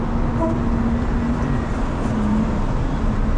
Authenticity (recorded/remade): recorded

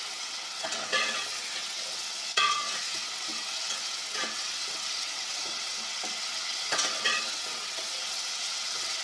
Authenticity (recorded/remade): remade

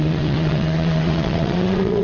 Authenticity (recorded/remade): remade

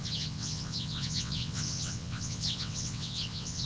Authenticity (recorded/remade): remade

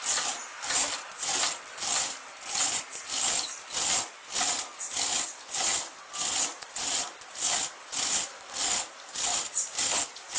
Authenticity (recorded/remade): recorded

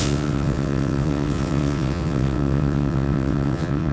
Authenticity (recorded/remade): remade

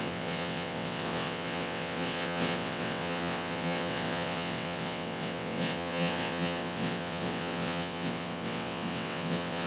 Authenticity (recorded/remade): remade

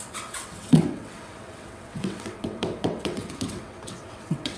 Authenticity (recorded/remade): remade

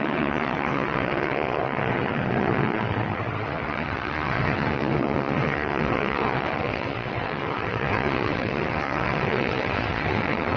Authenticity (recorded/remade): remade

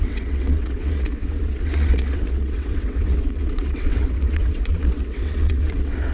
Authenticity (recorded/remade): remade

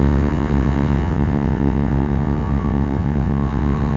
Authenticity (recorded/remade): remade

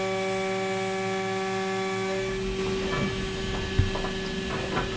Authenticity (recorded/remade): recorded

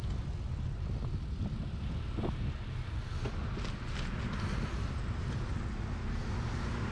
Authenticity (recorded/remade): recorded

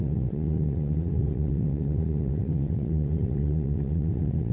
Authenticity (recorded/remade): remade